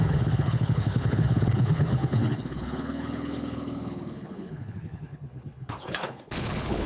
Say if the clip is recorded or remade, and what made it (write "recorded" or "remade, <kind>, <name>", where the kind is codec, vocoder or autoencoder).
remade, codec, HILCodec